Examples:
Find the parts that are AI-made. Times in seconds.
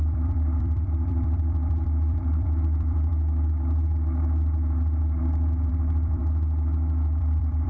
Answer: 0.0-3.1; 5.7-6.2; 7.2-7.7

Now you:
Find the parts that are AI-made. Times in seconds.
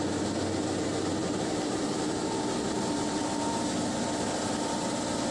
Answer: 1.2-3.5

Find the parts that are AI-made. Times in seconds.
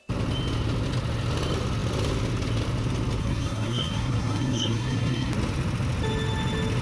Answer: 3.2-5.3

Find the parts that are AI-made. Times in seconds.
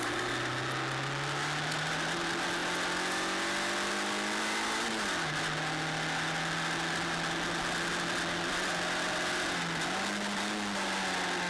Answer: none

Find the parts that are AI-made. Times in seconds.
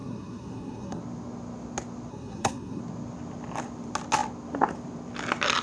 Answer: 0.0-1.0; 2.1-2.8